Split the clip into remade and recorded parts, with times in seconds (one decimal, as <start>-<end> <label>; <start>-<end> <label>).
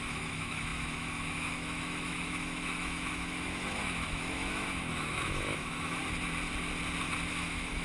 0.0-6.0 remade; 6.0-7.3 recorded; 7.3-7.8 remade